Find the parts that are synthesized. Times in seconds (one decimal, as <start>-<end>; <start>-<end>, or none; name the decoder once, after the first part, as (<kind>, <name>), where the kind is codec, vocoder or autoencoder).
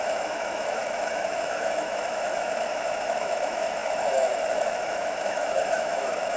0.0-6.4 (autoencoder, DAC-VAE)